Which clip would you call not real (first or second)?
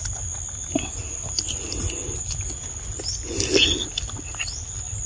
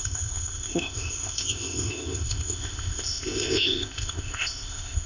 second